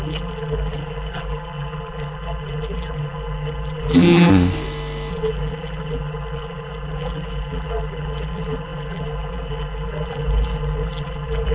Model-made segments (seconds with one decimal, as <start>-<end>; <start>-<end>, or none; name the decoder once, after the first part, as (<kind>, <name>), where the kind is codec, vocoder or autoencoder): 0.0-4.3 (vocoder, BigVGAN v2); 5.1-11.5